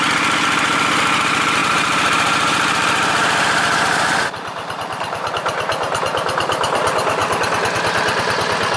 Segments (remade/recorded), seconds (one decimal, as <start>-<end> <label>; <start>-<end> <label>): 0.0-1.6 recorded; 1.6-5.3 remade; 5.3-8.8 recorded